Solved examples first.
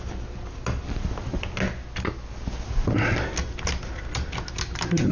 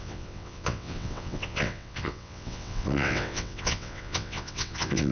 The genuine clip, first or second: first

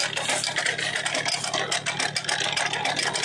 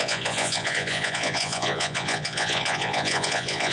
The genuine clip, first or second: first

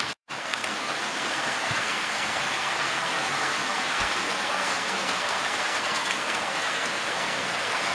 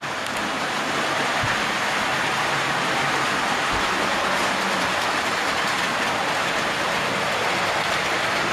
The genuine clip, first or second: second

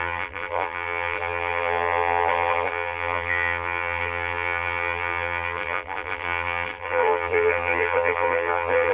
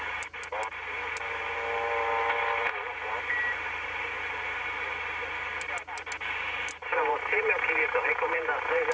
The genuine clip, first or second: second